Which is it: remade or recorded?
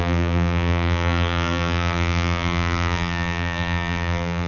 remade